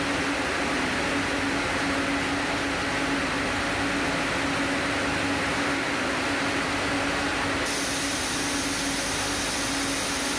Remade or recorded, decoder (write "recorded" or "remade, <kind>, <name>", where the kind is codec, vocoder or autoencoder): recorded